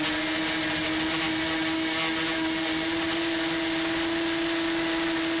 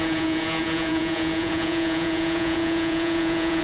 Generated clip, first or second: second